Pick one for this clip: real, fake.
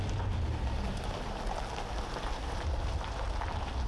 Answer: real